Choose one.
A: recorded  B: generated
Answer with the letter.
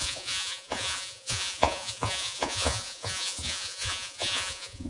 B